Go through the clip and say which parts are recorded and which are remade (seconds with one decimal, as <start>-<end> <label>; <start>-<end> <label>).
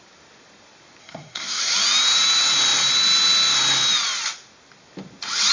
0.0-1.0 recorded; 1.0-1.6 remade; 1.6-5.5 recorded